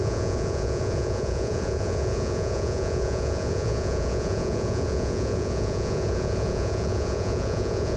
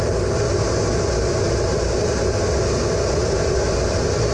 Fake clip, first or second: first